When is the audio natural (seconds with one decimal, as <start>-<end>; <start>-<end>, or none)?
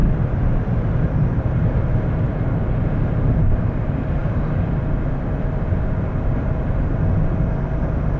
1.8-2.3; 3.6-8.2